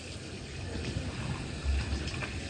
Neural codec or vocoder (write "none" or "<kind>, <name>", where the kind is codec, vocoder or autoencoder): none